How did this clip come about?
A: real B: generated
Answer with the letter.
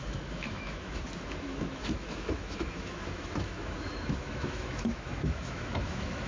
B